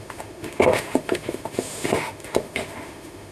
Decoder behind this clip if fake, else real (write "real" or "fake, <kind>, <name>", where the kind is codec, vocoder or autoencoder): fake, autoencoder, DAC-VAE